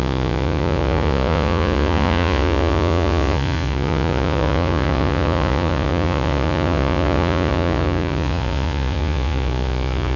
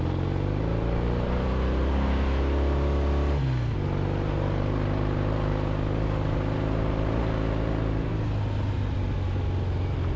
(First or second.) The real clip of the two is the second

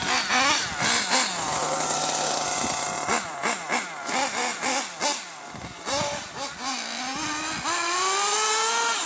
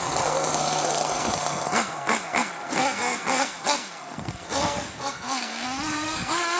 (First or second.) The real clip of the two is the first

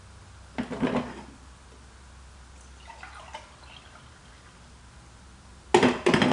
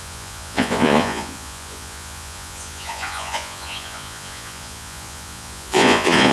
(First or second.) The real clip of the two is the first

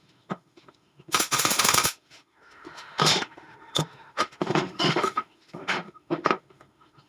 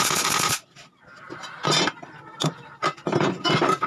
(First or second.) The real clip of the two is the second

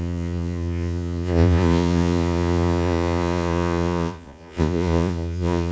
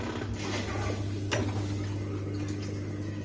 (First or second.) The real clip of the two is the second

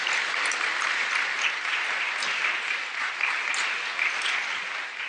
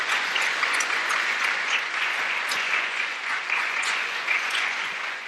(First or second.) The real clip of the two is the first